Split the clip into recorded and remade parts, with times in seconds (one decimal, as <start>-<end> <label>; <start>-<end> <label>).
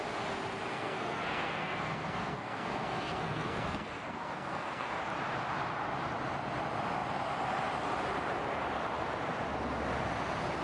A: 0.0-0.7 recorded; 0.7-5.0 remade; 5.0-10.6 recorded